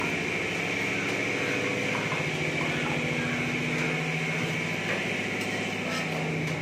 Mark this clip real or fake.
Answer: real